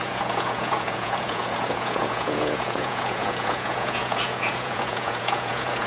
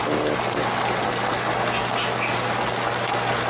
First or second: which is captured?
second